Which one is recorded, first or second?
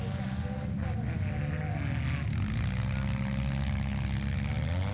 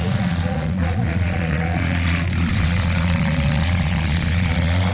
first